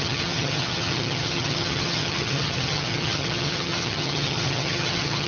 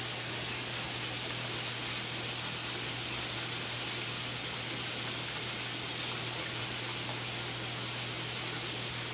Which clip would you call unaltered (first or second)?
second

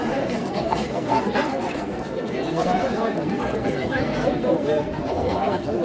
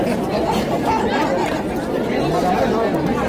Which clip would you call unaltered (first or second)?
second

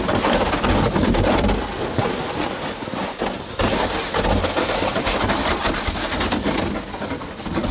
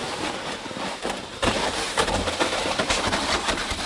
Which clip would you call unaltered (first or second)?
first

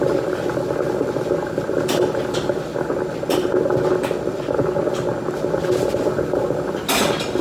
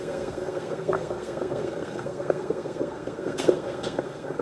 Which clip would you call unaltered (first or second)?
first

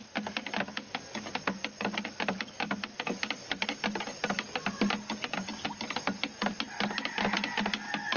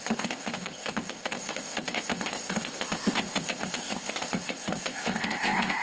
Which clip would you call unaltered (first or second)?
first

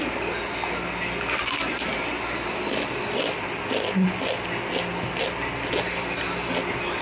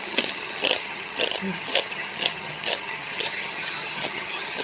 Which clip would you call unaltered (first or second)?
first